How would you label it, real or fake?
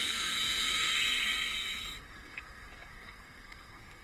fake